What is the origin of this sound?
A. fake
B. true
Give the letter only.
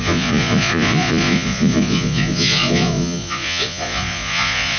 A